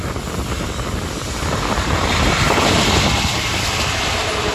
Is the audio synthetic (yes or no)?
yes